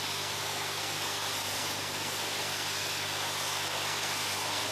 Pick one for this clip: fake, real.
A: fake